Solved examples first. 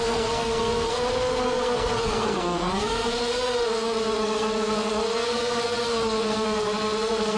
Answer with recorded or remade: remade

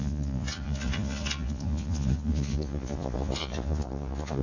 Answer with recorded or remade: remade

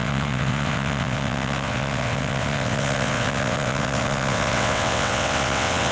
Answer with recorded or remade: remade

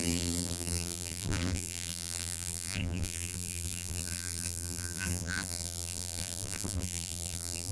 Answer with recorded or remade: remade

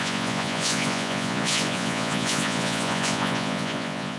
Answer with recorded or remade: remade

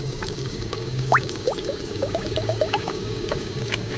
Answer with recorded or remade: remade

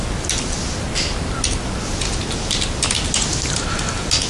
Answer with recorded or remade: recorded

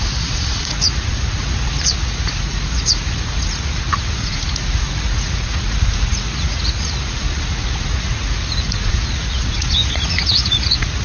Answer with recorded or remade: remade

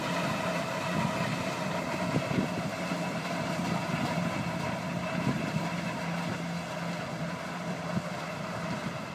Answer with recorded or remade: recorded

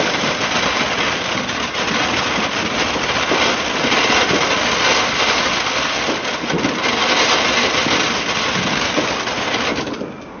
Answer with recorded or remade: recorded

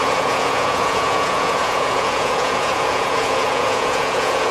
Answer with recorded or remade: remade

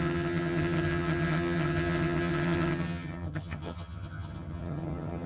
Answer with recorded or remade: remade